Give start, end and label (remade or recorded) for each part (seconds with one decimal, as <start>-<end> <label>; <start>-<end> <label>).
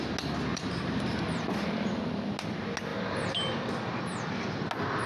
0.0-0.5 recorded; 0.5-2.0 remade; 2.0-2.9 recorded; 2.9-4.0 remade; 4.0-5.1 recorded